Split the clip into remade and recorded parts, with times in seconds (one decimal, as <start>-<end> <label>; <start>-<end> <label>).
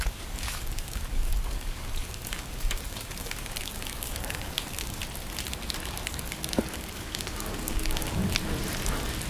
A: 0.0-5.0 remade; 5.0-6.1 recorded; 6.1-8.2 remade; 8.2-9.3 recorded